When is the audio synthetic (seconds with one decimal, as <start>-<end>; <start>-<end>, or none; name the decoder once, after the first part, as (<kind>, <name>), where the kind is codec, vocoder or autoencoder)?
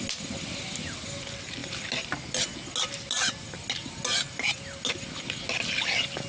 none